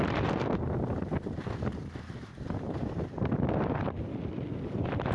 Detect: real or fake real